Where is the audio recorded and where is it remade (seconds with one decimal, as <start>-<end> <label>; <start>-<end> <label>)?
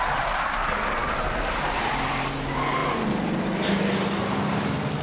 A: 0.0-5.0 recorded